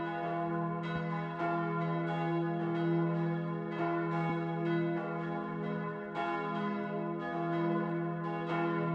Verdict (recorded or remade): recorded